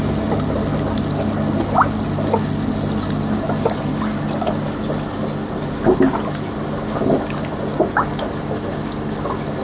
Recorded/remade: recorded